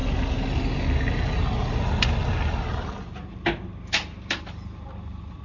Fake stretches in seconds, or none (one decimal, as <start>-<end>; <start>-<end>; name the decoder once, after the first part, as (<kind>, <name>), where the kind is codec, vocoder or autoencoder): none

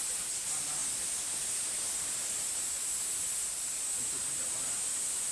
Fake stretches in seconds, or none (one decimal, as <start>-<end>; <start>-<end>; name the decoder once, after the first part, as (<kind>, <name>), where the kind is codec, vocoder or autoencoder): none